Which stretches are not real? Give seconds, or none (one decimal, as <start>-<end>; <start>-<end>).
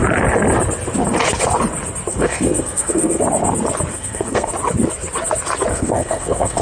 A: 2.1-3.2; 3.9-4.5; 5.7-6.6